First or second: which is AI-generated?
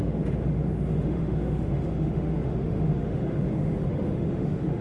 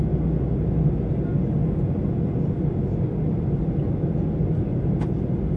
first